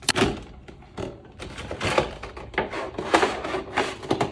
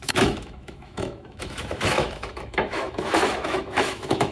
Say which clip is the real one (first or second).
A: first